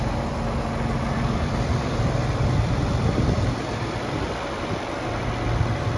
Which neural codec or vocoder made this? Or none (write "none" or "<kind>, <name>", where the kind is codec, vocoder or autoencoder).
vocoder, BigVGAN v2